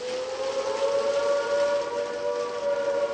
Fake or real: real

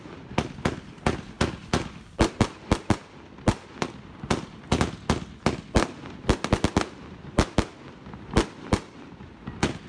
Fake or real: real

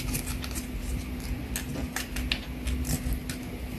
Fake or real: real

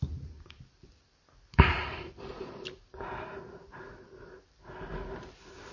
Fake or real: fake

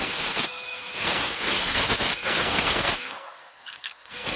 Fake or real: fake